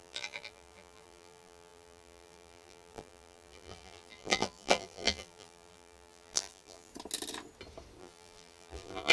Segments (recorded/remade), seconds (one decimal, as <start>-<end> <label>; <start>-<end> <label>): 0.0-6.9 remade; 6.9-8.0 recorded; 8.0-9.1 remade